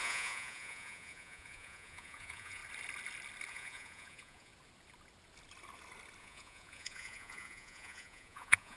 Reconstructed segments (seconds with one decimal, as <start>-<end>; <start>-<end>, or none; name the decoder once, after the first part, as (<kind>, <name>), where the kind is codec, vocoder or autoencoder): 0.0-2.6 (vocoder, Vocos); 3.5-4.5; 6.2-8.8